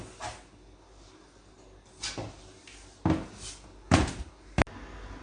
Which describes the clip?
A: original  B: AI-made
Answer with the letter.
A